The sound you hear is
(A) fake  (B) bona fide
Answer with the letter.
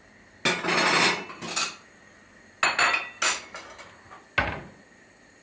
B